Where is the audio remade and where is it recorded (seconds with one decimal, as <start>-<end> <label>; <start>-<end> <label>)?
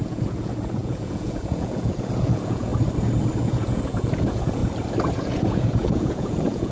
0.0-2.7 remade; 2.7-3.4 recorded; 3.4-4.6 remade; 4.6-5.2 recorded; 5.2-6.7 remade